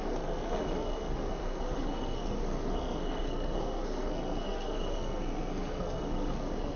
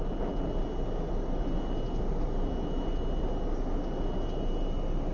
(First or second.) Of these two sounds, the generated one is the first